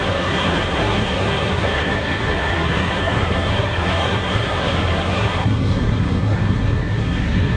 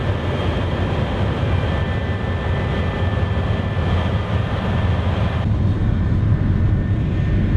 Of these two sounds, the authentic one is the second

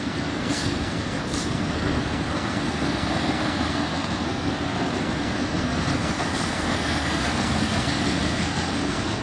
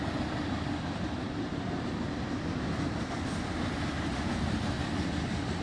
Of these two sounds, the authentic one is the second